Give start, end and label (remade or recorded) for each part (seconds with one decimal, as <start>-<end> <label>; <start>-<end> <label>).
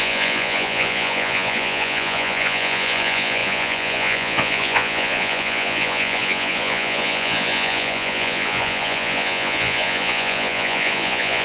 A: 0.0-11.4 remade